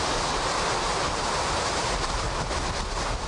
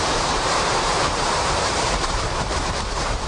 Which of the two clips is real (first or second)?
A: first